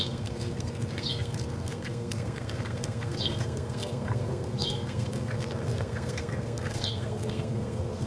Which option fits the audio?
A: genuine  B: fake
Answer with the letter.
B